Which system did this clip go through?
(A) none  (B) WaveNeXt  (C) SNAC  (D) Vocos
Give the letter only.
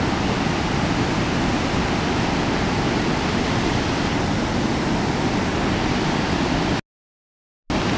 A